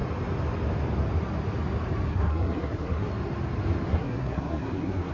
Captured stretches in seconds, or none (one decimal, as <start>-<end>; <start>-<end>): 0.0-2.1; 3.1-3.9